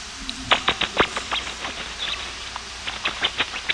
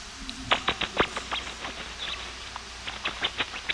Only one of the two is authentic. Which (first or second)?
second